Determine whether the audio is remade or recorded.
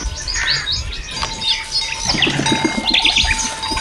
recorded